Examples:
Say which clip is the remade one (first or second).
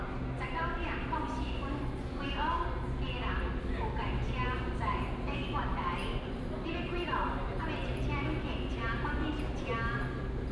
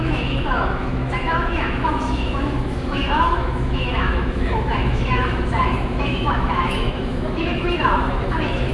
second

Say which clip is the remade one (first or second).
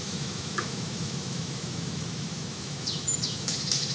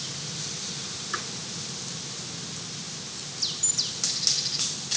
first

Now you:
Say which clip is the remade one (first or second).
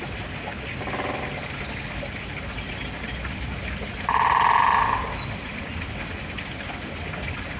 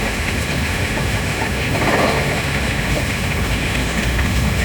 second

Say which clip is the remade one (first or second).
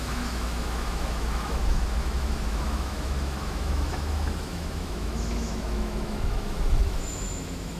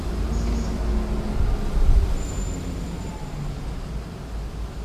first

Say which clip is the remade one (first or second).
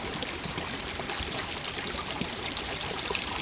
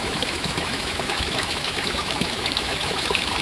second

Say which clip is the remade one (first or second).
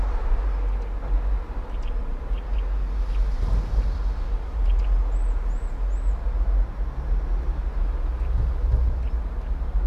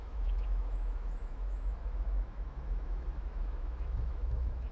second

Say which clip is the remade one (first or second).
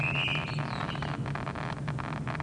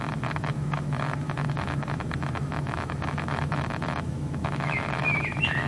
second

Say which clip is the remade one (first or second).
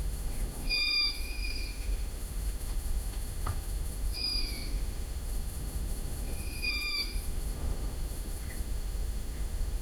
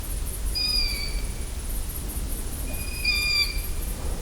first